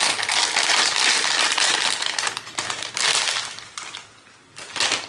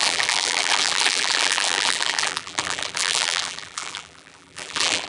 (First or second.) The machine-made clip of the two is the second